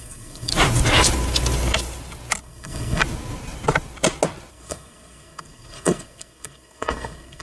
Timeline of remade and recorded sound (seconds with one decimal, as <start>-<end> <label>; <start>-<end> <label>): 0.0-0.5 remade; 0.5-2.4 recorded; 2.4-3.0 remade; 3.0-4.5 recorded; 4.5-7.4 remade